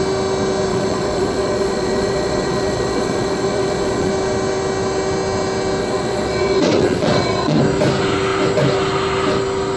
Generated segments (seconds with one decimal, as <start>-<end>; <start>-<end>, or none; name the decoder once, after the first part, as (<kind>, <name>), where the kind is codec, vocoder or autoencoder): 0.7-4.1 (vocoder, Vocos); 5.8-7.6